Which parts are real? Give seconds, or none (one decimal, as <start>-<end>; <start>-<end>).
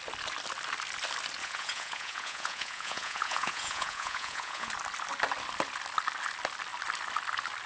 0.0-1.4; 4.7-7.7